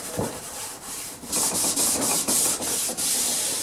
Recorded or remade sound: recorded